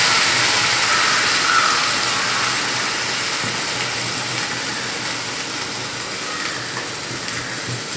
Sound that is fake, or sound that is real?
real